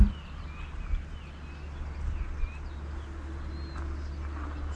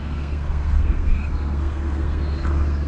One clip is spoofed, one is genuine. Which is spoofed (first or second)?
second